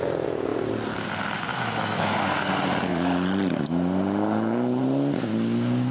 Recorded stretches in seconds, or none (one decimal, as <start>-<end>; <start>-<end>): 0.0-1.5; 2.2-5.9